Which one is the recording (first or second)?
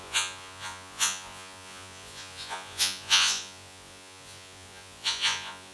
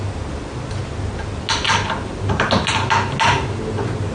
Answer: second